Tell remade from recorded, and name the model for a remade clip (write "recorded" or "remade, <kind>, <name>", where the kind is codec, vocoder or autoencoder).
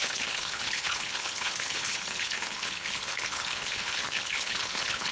remade, codec, HILCodec